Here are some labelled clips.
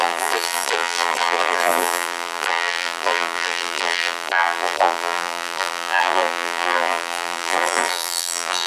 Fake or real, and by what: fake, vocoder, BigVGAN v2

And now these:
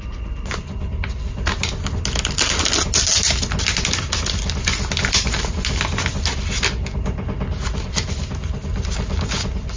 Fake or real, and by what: real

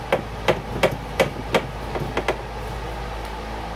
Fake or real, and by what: real